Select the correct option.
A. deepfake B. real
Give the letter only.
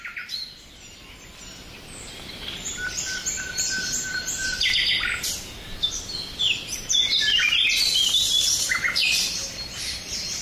B